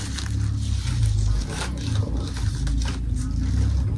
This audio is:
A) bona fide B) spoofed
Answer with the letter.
A